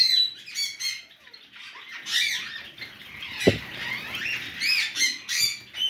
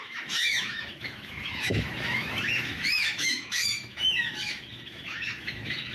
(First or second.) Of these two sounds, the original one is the first